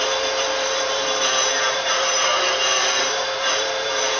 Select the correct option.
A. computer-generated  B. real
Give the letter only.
A